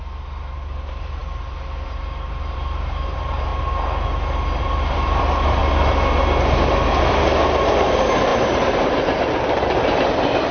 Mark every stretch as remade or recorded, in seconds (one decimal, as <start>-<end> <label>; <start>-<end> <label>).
0.0-3.5 remade; 3.5-4.6 recorded; 4.6-5.6 remade; 5.6-7.1 recorded; 7.1-10.5 remade